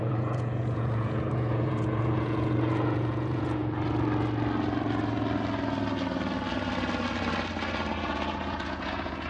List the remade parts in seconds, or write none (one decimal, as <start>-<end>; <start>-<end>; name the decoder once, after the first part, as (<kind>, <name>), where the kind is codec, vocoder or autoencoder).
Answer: 0.0-3.6 (vocoder, Vocos); 7.9-9.3